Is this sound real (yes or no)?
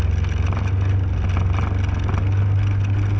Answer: yes